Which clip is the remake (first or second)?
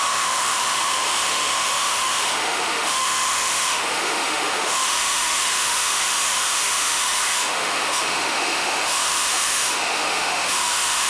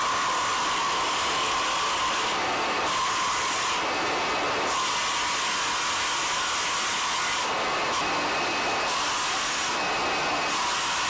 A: first